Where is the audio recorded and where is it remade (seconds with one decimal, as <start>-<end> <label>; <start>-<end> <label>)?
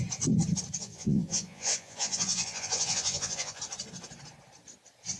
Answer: 0.0-0.8 recorded; 0.8-3.6 remade; 3.6-5.2 recorded